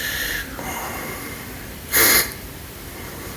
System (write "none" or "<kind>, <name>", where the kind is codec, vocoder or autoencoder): vocoder, BigVGAN v2